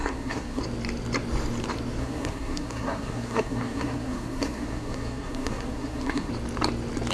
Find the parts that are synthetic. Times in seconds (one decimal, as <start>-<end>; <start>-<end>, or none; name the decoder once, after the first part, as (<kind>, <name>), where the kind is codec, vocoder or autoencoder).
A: 0.0-0.6 (codec, SNAC); 2.0-6.3